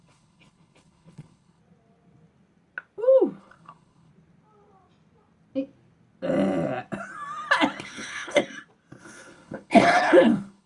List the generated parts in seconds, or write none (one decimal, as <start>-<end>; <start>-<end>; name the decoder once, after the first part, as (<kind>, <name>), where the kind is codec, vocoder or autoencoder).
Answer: 0.0-1.6 (codec, HILCodec); 3.4-4.1; 7.8-8.4; 9.0-10.7